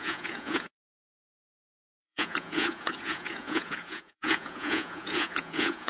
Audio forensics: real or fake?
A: fake